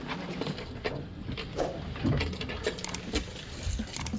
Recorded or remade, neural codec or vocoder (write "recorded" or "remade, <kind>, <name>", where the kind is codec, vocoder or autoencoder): recorded